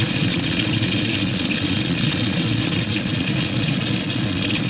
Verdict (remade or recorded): remade